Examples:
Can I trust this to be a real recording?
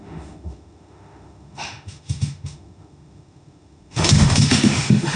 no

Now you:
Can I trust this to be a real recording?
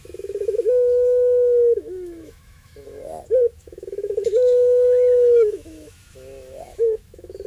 no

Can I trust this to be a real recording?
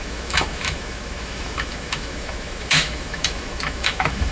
no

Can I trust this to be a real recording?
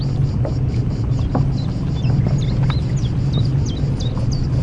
yes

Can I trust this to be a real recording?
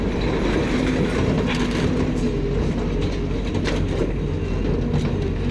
yes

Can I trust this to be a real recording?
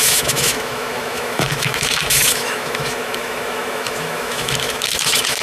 no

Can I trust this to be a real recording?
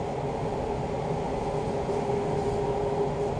yes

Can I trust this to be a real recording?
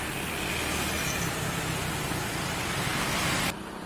yes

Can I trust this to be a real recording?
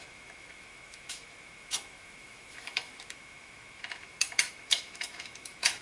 no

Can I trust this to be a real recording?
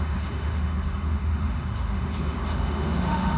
no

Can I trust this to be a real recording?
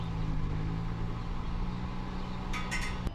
yes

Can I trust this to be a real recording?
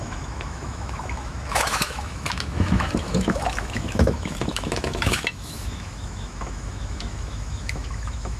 no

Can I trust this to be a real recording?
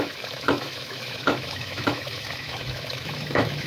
no